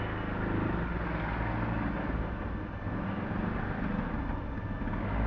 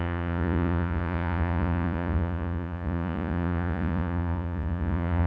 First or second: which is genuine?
first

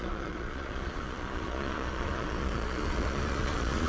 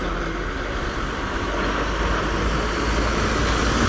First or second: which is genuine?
second